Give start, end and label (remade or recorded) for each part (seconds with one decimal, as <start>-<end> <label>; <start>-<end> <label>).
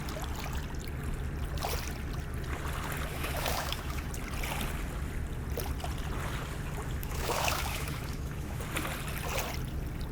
0.0-3.1 recorded; 3.1-4.1 remade; 4.1-7.0 recorded; 7.0-8.6 remade; 8.6-10.1 recorded